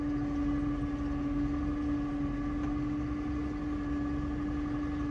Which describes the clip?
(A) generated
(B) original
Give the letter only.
B